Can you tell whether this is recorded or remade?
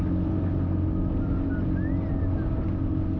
recorded